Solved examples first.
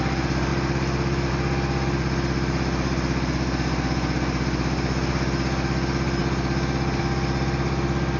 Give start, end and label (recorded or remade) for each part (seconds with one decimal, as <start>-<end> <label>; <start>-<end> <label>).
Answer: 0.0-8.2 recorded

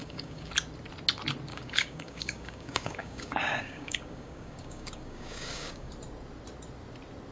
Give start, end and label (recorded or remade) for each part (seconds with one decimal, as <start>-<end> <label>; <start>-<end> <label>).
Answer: 0.0-0.5 remade; 0.5-1.5 recorded; 1.5-5.9 remade; 5.9-7.3 recorded

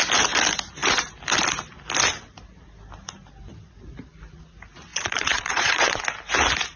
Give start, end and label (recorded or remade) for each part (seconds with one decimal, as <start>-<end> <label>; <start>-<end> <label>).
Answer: 0.0-4.9 recorded; 4.9-6.0 remade; 6.0-6.8 recorded

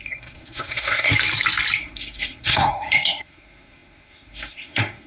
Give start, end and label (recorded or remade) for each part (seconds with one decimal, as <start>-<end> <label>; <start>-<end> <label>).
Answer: 0.0-1.1 remade; 1.1-1.8 recorded; 1.8-5.1 remade